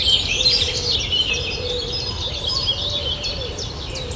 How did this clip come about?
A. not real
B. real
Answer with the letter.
B